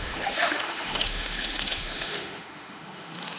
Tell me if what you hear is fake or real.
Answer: fake